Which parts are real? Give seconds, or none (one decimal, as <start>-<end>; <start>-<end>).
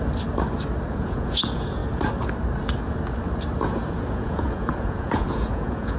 0.0-0.9; 1.8-3.6